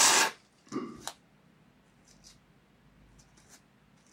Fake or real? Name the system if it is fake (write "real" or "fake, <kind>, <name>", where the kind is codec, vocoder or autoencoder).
real